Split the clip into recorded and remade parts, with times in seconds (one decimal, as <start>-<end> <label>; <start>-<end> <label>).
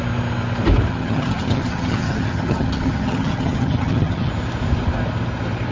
0.0-0.9 recorded; 0.9-4.3 remade; 4.3-5.7 recorded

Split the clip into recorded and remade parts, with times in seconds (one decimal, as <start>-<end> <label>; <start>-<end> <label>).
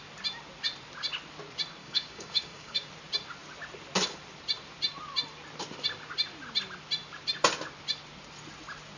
0.0-1.8 recorded; 1.8-2.9 remade; 2.9-9.0 recorded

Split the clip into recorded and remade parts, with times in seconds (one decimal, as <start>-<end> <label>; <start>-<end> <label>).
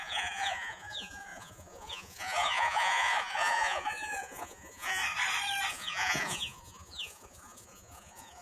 0.0-5.0 remade; 5.0-5.7 recorded; 5.7-8.4 remade